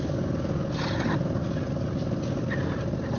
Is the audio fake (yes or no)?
no